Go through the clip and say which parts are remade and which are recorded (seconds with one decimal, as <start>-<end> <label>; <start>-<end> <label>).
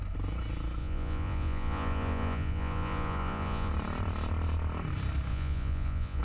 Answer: 0.0-0.8 recorded; 0.8-3.7 remade; 3.7-5.3 recorded; 5.3-6.2 remade